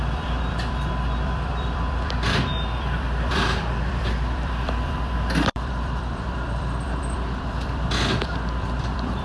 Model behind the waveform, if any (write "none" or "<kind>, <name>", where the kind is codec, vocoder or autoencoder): vocoder, BigVGAN v2